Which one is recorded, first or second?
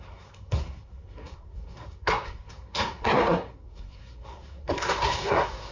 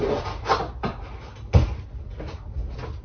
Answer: second